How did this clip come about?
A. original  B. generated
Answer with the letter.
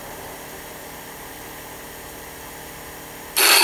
A